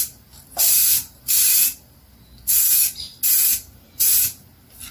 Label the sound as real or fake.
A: real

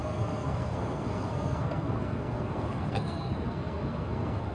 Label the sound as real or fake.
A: fake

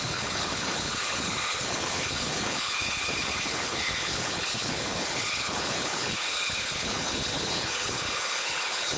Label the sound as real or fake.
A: fake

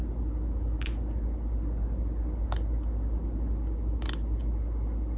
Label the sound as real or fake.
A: real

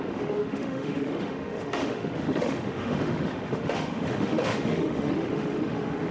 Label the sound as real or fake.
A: fake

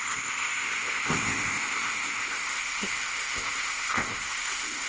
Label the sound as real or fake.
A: fake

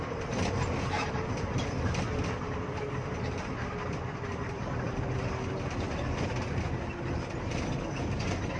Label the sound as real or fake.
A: real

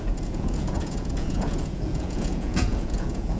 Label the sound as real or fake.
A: fake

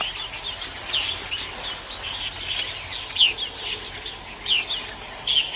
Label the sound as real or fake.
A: real